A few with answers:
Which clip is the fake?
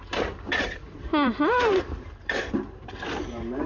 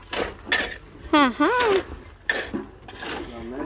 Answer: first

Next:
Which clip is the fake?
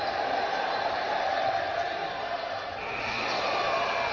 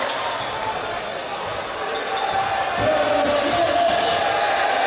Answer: first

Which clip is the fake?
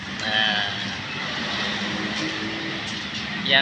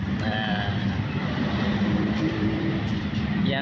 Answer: second